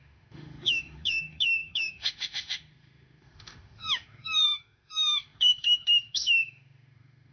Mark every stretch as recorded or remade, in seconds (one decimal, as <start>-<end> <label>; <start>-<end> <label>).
0.0-7.3 remade